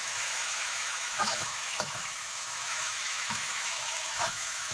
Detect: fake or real fake